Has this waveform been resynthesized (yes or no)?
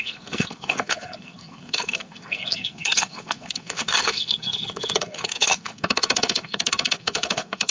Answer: yes